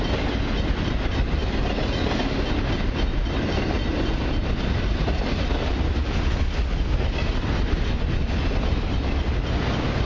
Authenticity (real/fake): real